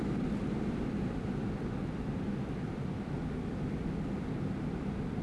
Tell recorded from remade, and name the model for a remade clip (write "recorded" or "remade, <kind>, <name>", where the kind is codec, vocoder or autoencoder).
recorded